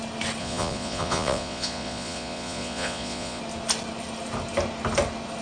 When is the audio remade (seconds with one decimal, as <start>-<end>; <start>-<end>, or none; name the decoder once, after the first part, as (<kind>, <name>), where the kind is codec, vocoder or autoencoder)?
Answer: 0.4-3.4 (vocoder, Vocos)